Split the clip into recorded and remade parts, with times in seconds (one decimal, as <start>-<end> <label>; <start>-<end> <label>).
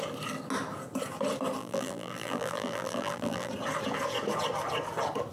0.0-1.6 recorded; 1.6-3.5 remade; 3.5-5.3 recorded